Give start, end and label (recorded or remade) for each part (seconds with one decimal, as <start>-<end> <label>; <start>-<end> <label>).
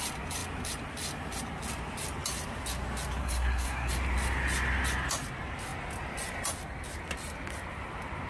0.0-3.2 recorded; 3.2-3.9 remade; 3.9-8.3 recorded